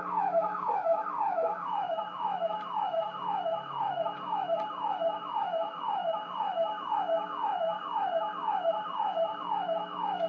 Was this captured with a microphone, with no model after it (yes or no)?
no